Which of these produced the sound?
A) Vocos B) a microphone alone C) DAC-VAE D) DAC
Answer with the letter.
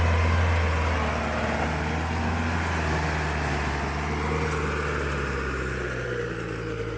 B